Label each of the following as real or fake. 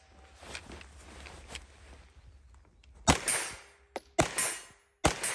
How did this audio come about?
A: real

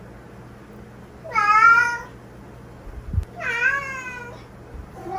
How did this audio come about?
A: real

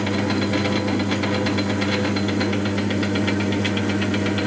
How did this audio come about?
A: real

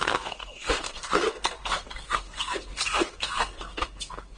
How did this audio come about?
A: fake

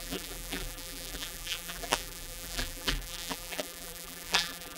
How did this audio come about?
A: fake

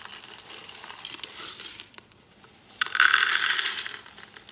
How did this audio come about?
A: fake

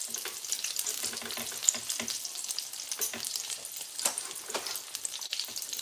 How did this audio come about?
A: real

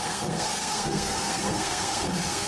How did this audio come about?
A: fake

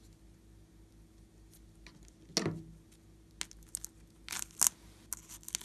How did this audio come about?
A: real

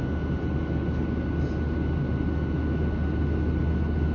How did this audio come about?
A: real